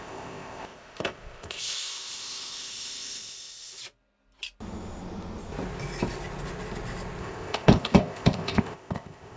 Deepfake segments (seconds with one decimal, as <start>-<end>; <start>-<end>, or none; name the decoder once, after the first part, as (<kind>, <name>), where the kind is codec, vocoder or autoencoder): 0.0-3.8 (codec, ZipCodec); 7.2-9.4